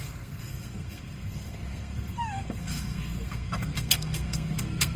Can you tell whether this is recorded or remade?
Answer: remade